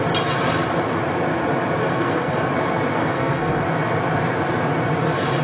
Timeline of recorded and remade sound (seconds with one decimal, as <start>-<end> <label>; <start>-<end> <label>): 0.0-1.8 recorded; 1.8-2.5 remade; 2.5-3.0 recorded; 3.0-3.6 remade; 3.6-5.4 recorded